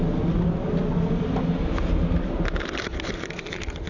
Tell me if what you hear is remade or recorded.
recorded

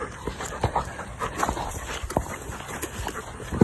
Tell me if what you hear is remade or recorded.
recorded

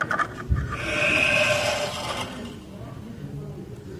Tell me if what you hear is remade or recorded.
recorded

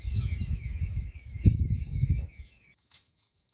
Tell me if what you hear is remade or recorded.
remade